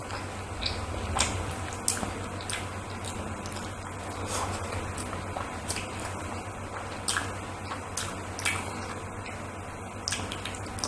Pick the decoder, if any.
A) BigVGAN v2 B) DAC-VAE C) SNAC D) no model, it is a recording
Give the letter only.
D